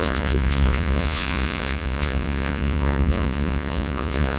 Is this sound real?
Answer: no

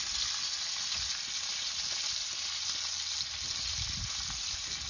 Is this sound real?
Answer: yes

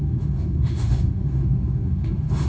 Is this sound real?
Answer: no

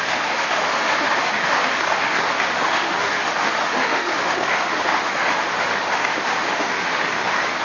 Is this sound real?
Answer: no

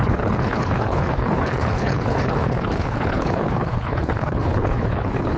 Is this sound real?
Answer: no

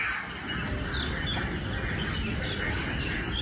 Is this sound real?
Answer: yes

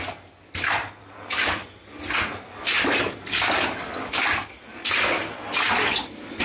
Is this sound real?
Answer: yes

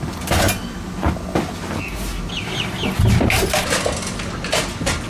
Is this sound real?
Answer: yes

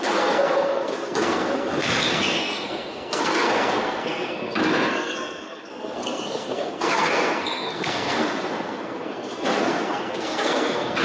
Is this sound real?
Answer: no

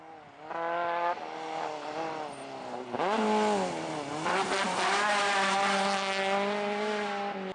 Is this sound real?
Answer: yes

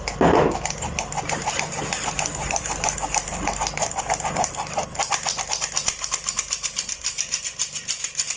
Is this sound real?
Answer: yes